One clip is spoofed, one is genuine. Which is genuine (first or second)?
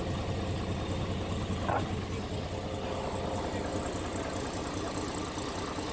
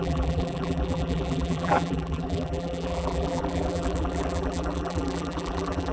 first